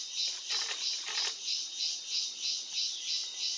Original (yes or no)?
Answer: yes